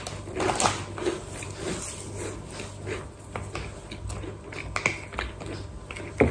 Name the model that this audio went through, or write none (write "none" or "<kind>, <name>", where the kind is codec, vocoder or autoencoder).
none